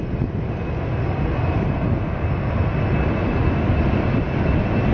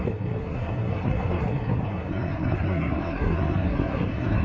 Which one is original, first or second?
first